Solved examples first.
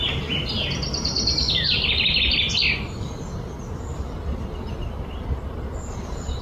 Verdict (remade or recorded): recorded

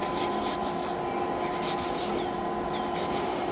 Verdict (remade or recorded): recorded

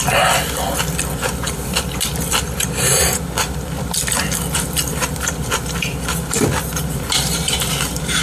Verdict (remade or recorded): remade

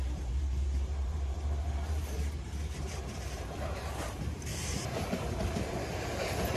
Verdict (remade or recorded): remade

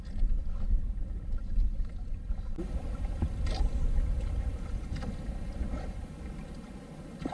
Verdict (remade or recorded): recorded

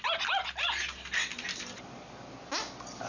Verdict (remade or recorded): recorded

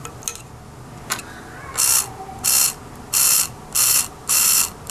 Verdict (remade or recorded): recorded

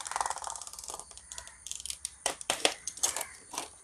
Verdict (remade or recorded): remade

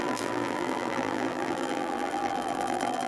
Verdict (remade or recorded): remade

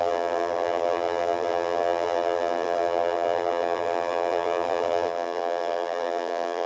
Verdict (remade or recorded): remade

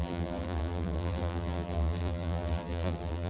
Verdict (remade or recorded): remade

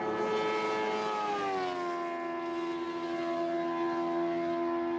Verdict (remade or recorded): recorded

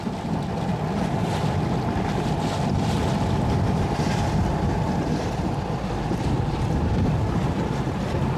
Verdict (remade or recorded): recorded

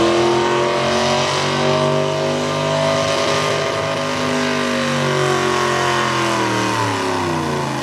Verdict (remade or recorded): recorded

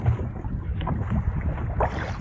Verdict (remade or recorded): remade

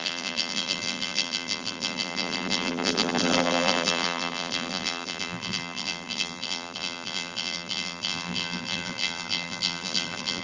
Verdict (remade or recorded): remade